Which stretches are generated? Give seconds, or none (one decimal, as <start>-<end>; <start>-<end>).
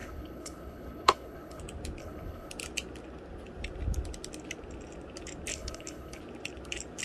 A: 0.0-1.6; 2.0-2.5; 5.5-6.2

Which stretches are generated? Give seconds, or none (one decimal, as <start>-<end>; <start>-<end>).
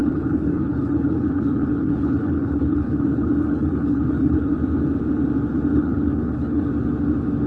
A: 0.0-4.5; 5.7-6.7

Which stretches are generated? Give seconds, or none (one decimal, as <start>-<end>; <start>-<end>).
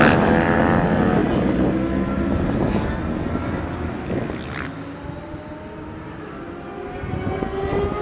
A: none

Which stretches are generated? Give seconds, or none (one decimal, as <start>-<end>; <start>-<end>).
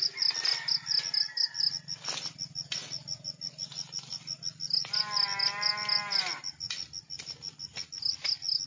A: none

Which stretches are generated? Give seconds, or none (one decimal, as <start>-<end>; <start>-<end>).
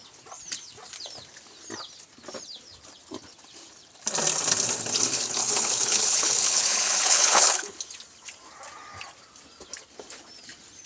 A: 5.1-7.8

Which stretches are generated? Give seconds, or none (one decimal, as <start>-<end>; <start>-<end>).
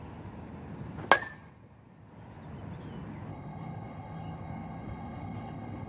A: 3.3-5.9